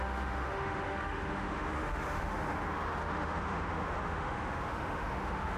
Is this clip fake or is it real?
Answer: fake